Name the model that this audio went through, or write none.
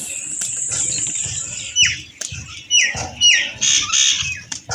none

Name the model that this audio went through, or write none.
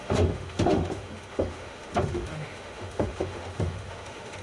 autoencoder, DAC-VAE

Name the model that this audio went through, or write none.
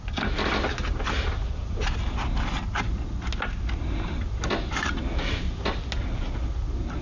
none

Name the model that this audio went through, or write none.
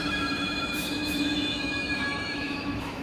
autoencoder, DAC-VAE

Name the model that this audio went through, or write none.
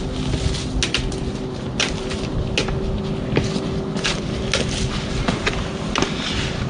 none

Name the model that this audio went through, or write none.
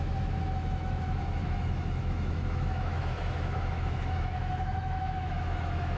autoencoder, DAC-VAE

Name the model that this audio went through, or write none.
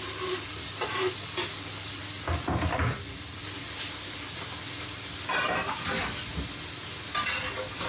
none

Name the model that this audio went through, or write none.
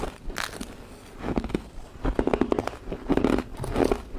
none